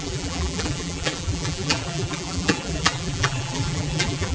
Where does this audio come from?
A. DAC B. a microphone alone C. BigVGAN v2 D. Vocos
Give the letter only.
C